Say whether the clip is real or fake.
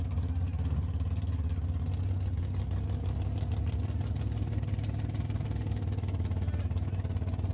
real